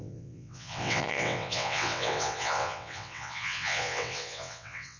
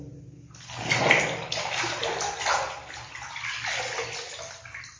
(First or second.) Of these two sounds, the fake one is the first